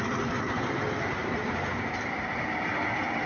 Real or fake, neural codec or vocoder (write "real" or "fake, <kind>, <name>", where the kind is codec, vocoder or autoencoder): real